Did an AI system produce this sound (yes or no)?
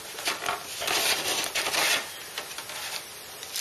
no